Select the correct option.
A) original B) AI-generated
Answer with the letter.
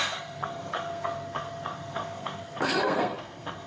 B